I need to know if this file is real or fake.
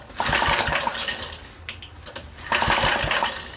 real